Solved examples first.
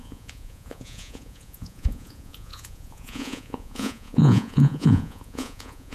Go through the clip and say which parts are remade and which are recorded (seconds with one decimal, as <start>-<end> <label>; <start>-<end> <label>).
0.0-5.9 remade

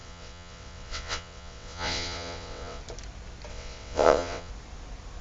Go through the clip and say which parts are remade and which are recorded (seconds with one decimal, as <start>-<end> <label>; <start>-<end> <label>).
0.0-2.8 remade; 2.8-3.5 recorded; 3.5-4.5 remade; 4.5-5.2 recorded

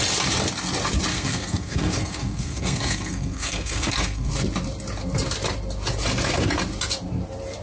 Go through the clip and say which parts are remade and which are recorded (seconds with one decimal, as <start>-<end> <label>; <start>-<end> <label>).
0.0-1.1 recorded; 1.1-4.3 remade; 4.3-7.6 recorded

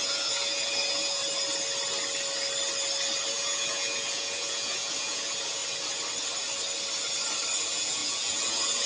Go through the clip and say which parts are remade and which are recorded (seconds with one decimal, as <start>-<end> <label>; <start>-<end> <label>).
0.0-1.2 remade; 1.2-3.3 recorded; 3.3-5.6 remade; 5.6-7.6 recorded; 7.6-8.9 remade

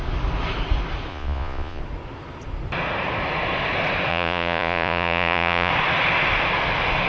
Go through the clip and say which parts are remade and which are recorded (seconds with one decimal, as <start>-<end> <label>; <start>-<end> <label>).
0.0-1.1 recorded; 1.1-1.8 remade; 1.8-4.1 recorded; 4.1-5.7 remade; 5.7-7.1 recorded

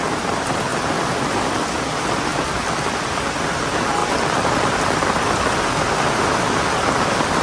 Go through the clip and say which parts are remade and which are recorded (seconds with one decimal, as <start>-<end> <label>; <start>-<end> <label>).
0.0-0.7 recorded; 0.7-1.8 remade; 1.8-2.3 recorded; 2.3-3.3 remade; 3.3-4.0 recorded; 4.0-5.3 remade; 5.3-7.4 recorded